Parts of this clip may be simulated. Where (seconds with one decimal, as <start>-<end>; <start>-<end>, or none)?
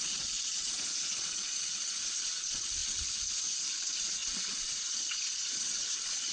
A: 0.0-6.3